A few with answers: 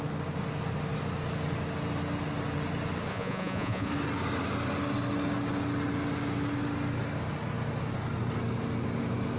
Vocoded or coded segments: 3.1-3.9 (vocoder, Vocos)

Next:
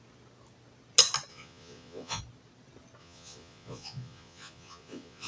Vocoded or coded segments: 1.3-2.2 (vocoder, Vocos); 3.0-5.3

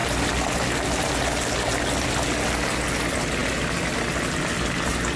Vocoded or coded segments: none